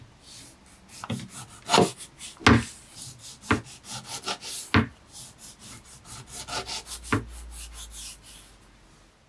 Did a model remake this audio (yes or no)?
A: no